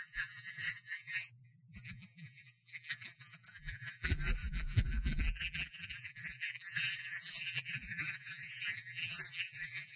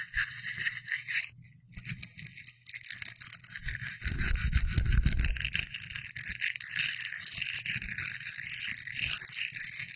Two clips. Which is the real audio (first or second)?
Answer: second